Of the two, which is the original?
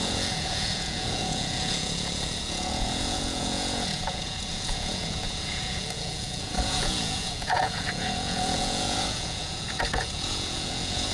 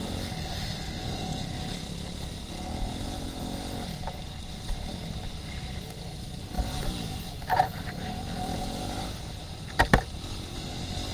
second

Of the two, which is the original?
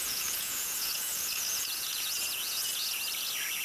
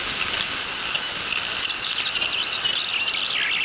second